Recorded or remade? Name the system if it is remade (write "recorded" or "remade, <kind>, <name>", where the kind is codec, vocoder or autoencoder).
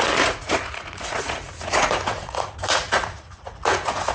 remade, vocoder, Vocos